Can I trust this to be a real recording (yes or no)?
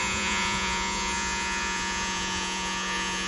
no